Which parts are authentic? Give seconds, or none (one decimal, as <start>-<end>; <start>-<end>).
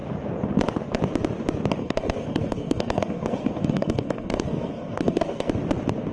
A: 0.0-1.8; 5.5-6.1